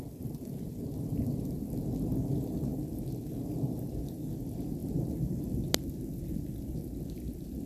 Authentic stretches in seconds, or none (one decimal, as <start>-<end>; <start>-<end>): 0.0-7.7